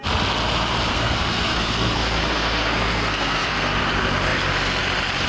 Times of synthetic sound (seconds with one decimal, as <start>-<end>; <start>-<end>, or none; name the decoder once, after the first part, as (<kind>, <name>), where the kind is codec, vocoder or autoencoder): 0.9-3.8 (codec, SNAC)